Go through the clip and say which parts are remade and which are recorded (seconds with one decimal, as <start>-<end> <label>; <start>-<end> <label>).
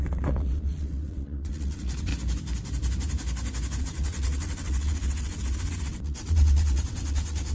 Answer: 0.0-2.1 remade; 2.1-3.8 recorded; 3.8-7.5 remade